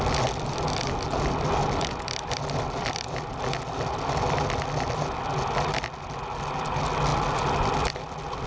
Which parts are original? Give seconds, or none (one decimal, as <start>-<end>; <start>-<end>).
0.0-8.5

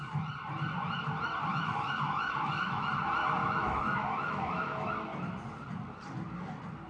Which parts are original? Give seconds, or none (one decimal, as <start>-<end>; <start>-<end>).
0.0-1.5; 2.9-3.4; 4.9-6.9

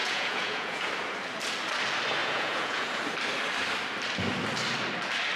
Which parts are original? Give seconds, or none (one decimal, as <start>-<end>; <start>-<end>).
0.9-2.2; 3.0-5.4

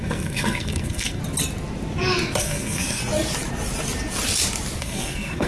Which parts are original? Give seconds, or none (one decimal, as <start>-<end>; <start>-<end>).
1.2-2.4; 3.0-4.8

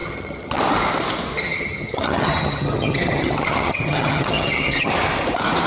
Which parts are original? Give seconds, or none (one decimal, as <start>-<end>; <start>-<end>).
0.6-1.5; 4.9-5.7

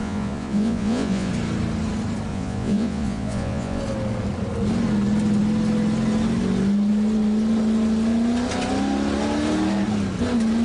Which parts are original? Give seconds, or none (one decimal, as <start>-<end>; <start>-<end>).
1.3-2.3; 3.8-10.6